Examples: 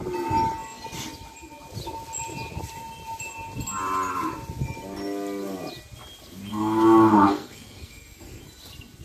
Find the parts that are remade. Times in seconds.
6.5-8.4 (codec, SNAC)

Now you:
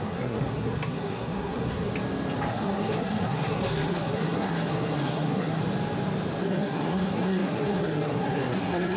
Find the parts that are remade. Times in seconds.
0.0-1.9 (codec, SNAC); 2.5-5.6; 6.4-9.0

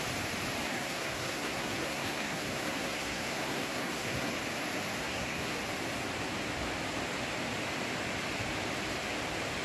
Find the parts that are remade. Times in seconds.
0.6-4.3 (codec, SNAC); 5.0-5.6

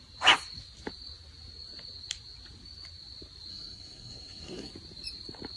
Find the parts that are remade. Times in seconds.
3.5-4.7 (codec, SNAC)

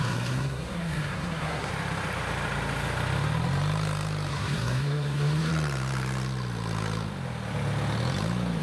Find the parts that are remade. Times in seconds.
0.0-1.7 (codec, SNAC); 4.3-5.5

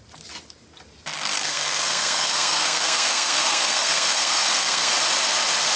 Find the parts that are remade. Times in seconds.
1.4-4.9 (codec, SNAC)